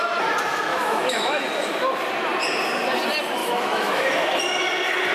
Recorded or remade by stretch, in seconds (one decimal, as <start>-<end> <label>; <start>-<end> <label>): 0.0-0.7 recorded; 0.7-1.4 remade; 1.4-3.4 recorded; 3.4-4.4 remade; 4.4-5.1 recorded